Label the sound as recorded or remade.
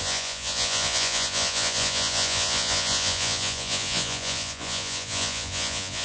remade